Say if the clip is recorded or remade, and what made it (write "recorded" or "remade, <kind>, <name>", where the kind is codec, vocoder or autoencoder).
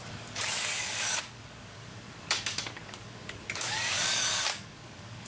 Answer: remade, codec, DAC